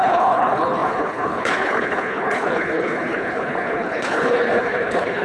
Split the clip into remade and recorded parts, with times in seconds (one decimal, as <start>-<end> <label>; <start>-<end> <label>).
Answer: 0.0-5.2 remade